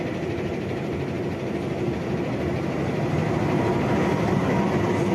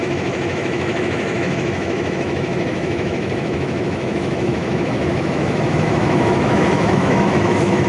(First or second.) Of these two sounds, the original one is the first